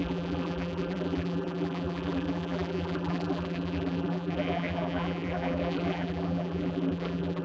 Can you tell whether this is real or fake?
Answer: fake